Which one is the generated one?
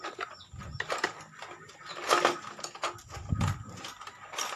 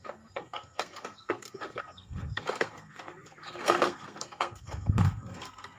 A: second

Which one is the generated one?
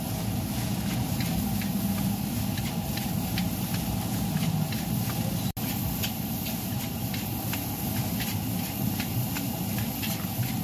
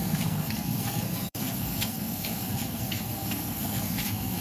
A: second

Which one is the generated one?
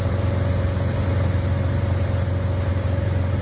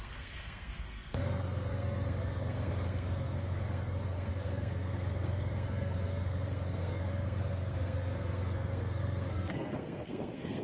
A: second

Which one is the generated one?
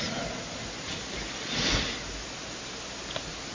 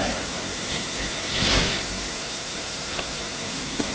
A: second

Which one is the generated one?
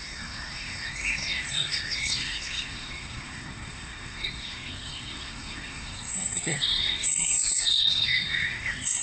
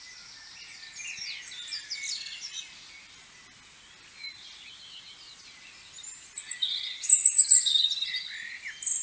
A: first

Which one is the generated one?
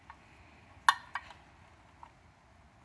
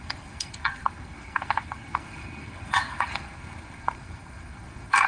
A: second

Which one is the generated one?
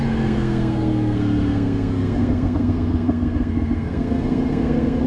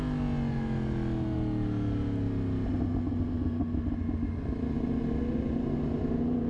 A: first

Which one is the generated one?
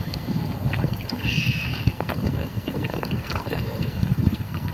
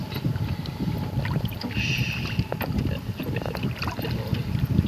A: first